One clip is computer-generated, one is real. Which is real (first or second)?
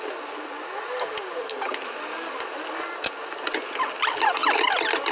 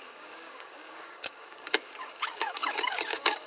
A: first